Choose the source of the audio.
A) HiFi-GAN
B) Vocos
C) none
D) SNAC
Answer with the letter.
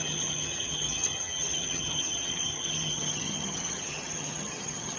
A